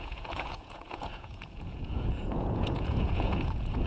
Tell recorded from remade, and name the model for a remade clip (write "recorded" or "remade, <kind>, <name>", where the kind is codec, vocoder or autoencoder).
remade, vocoder, Vocos